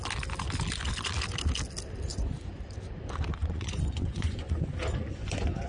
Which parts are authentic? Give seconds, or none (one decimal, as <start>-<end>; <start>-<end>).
0.0-2.1; 2.6-3.4